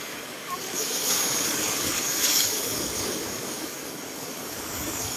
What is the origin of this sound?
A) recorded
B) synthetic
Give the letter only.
B